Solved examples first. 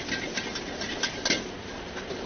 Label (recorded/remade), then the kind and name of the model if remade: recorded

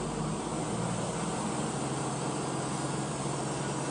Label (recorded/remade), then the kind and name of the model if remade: recorded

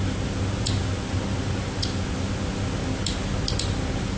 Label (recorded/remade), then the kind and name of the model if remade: recorded